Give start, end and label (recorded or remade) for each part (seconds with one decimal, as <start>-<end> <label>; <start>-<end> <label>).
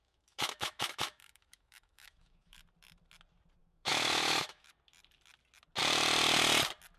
0.0-2.6 remade; 2.6-3.6 recorded; 3.6-4.7 remade; 4.7-7.0 recorded